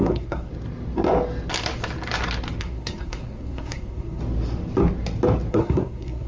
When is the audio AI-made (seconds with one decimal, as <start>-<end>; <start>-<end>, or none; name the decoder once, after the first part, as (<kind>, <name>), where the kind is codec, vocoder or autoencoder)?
0.0-0.5 (codec, SNAC); 2.6-4.2; 5.5-6.3